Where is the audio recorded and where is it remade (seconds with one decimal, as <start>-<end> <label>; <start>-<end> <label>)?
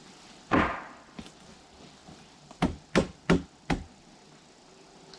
0.0-5.2 recorded